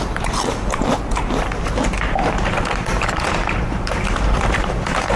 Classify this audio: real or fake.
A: fake